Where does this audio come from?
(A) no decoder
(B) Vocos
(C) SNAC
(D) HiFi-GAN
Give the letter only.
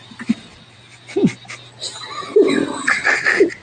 A